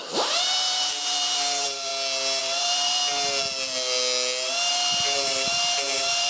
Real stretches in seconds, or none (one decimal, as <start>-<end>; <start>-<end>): 1.9-2.4; 3.0-4.7

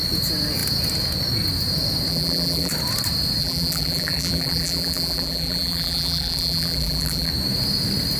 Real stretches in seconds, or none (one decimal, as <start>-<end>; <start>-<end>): 0.0-2.1; 2.7-3.4; 7.3-8.2

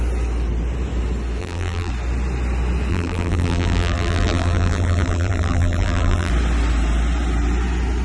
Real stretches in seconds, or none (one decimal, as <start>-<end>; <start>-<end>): 0.0-1.4; 1.9-2.9; 6.3-8.0

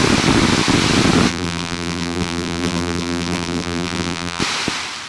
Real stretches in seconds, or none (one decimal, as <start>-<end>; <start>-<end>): 0.0-1.3; 4.4-5.1

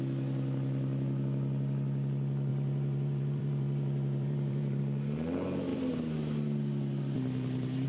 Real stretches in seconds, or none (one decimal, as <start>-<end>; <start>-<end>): 0.0-2.5; 4.8-7.9

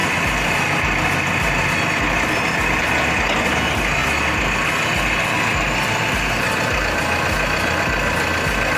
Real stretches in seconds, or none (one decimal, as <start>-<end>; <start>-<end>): 0.0-8.8

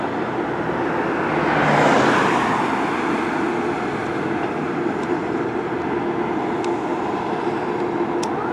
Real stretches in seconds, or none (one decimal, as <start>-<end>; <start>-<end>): 0.0-4.0; 5.7-6.9; 7.7-8.5

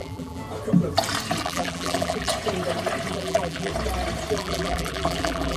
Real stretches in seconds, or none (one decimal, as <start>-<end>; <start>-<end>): 0.4-1.4; 2.3-3.1; 3.7-4.3